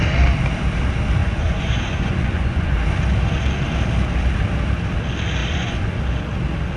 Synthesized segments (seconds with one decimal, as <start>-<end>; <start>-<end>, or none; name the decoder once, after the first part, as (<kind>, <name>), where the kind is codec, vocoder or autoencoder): 1.2-2.8 (vocoder, Vocos); 5.4-6.0